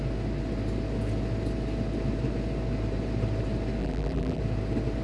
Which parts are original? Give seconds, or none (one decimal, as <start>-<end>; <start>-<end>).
0.0-3.8; 4.4-5.0